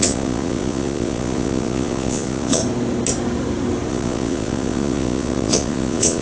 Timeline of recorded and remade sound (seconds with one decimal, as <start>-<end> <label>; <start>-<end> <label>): 0.0-2.6 remade; 2.6-3.9 recorded; 3.9-6.2 remade